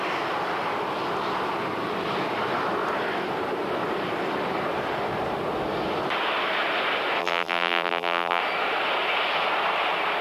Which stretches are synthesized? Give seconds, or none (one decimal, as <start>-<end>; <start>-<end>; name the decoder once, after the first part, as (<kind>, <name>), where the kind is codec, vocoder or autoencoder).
7.2-8.4 (vocoder, BigVGAN v2)